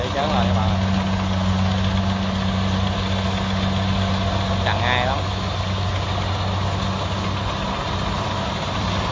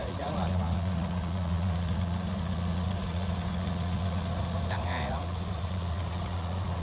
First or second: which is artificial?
second